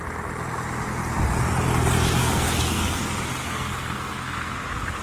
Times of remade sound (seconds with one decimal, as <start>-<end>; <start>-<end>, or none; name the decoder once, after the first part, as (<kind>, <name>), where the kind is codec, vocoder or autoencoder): 2.2-3.0 (codec, SNAC); 3.4-4.5